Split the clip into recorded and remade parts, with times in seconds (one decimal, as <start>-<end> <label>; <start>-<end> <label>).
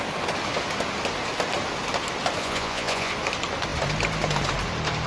0.0-2.4 recorded; 2.4-3.1 remade; 3.1-5.1 recorded